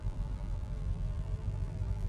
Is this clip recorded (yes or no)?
no